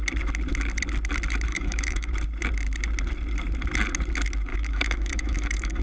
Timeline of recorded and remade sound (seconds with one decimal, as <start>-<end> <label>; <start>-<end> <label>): 0.0-1.5 recorded; 1.5-2.1 remade; 2.1-4.5 recorded; 4.5-5.8 remade